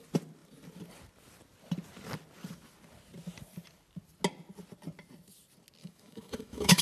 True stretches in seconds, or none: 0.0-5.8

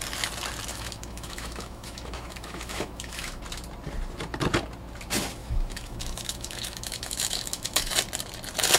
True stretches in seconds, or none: 0.0-0.7; 3.4-5.4; 7.9-8.8